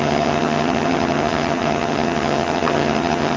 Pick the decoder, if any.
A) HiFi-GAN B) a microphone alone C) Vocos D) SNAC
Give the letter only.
A